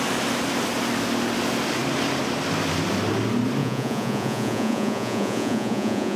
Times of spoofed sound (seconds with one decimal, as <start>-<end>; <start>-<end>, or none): 3.6-6.2